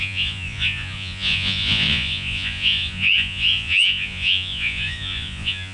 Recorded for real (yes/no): no